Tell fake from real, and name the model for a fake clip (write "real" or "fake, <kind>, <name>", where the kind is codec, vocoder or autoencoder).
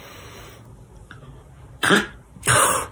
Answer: fake, vocoder, BigVGAN v2